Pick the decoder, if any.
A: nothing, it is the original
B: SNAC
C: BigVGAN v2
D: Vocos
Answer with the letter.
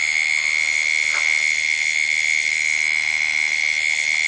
A